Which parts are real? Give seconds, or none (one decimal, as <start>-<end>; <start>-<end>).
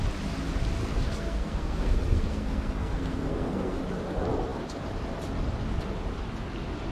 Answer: 0.0-0.8; 3.8-6.9